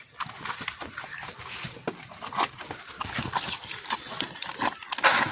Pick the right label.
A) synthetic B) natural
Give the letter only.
B